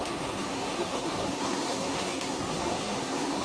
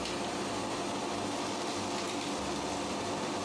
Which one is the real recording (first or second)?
second